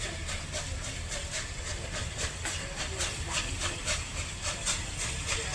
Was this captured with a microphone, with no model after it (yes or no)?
yes